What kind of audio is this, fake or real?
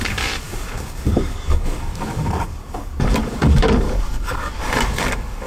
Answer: fake